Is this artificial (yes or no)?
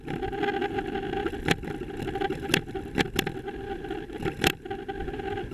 no